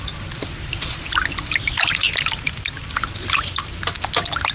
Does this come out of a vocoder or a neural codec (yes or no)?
no